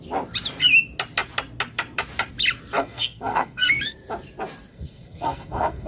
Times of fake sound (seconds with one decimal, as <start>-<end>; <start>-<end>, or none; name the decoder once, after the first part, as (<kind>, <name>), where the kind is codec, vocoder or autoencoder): 2.8-3.7 (codec, SNAC); 4.7-5.9